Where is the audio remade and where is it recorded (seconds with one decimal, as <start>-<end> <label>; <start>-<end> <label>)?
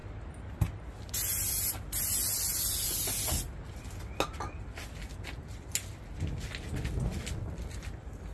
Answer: 0.0-8.3 recorded